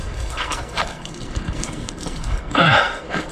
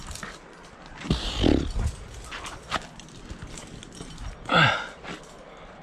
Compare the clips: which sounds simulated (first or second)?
first